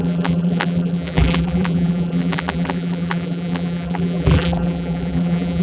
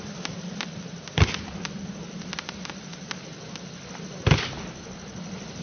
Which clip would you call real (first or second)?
second